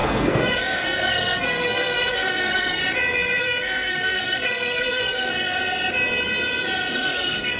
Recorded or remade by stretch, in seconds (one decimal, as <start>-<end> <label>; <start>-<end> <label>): 0.0-2.8 remade; 2.8-3.4 recorded; 3.4-5.6 remade; 5.6-6.9 recorded; 6.9-7.6 remade